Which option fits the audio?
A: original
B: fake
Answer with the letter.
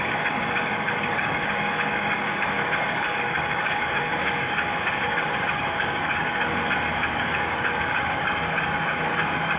B